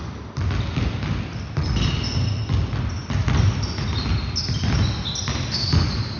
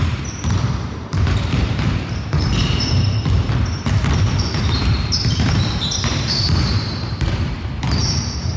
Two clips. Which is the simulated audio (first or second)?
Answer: second